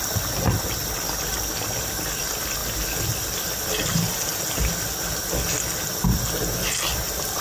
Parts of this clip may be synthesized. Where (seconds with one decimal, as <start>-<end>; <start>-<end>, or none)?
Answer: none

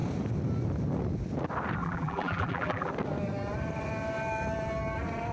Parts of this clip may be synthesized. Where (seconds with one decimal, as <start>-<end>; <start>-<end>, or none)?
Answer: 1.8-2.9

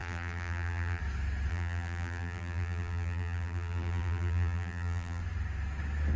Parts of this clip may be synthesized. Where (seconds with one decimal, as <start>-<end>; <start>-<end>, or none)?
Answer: 0.0-1.0; 1.5-5.2

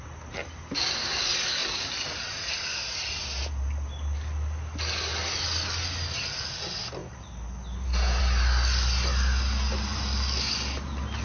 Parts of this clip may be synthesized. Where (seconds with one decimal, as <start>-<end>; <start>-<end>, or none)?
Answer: none

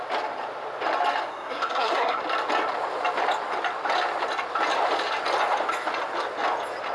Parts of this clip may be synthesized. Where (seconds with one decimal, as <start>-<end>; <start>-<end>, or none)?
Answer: 1.3-2.2